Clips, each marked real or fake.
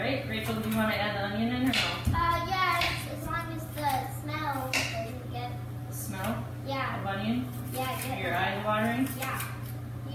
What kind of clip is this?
real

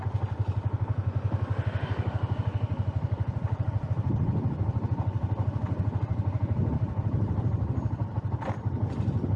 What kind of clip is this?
fake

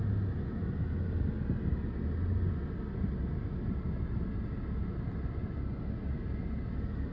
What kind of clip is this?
real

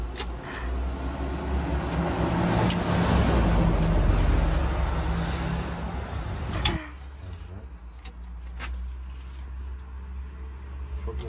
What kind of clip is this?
real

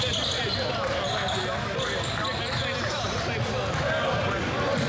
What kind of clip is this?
real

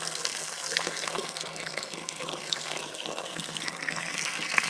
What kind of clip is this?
fake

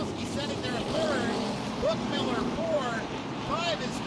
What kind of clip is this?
fake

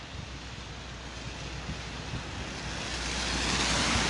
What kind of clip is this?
real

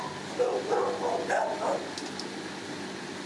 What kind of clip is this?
real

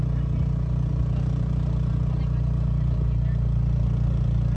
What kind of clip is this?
real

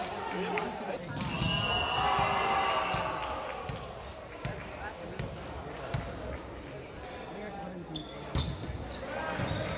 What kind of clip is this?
real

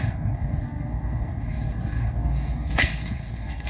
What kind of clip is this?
fake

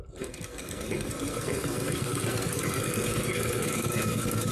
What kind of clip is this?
fake